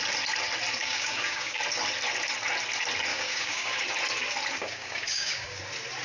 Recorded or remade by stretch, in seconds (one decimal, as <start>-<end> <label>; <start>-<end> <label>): 0.0-0.8 recorded; 0.8-1.6 remade; 1.6-3.1 recorded; 3.1-3.8 remade; 3.8-4.5 recorded; 4.5-5.6 remade; 5.6-6.0 recorded